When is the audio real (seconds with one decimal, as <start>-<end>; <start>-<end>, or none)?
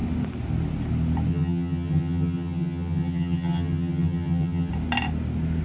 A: 0.0-1.3; 4.7-5.6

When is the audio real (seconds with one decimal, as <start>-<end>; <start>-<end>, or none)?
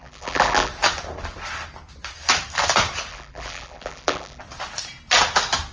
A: 0.7-3.1; 4.4-5.7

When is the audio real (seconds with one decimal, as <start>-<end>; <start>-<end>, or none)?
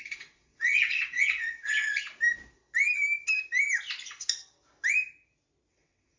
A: 2.0-5.7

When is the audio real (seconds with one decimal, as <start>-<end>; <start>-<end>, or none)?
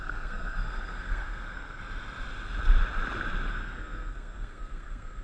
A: 1.8-3.5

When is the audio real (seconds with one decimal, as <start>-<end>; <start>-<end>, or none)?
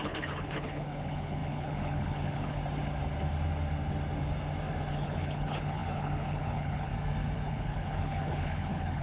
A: 2.6-4.9; 6.9-7.5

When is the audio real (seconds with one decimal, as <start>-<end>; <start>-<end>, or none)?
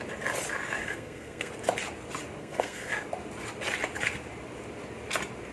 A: 0.0-0.8; 1.5-2.4; 2.9-5.5